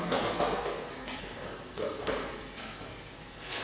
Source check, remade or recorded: remade